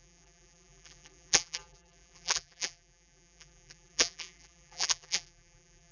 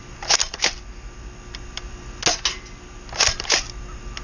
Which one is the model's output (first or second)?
first